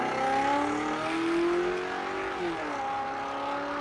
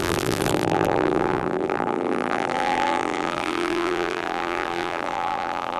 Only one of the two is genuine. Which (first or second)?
first